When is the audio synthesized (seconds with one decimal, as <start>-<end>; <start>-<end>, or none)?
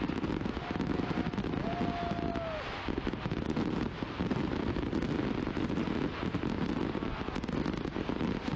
none